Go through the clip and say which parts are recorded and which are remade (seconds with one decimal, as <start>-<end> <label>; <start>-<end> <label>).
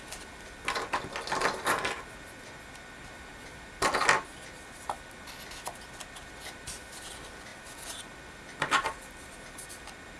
0.0-10.2 recorded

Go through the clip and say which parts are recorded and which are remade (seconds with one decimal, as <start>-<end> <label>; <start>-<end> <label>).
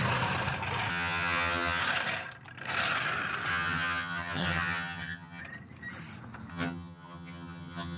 0.0-0.9 recorded; 0.9-1.8 remade; 1.8-3.5 recorded; 3.5-5.4 remade; 5.4-6.5 recorded; 6.5-8.0 remade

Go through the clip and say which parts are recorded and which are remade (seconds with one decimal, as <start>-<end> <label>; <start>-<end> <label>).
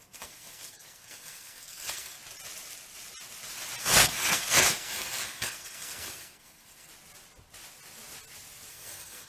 0.0-2.2 remade; 2.2-3.8 recorded; 3.8-6.9 remade; 6.9-8.7 recorded; 8.7-9.3 remade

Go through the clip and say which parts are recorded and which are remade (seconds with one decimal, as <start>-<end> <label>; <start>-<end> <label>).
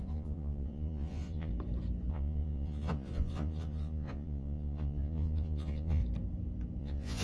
0.0-1.5 remade; 1.5-2.1 recorded; 2.1-6.0 remade; 6.0-6.8 recorded; 6.8-7.2 remade